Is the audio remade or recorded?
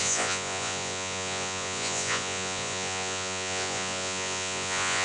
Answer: remade